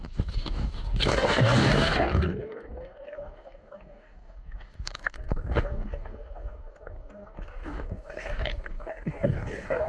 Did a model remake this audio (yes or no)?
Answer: yes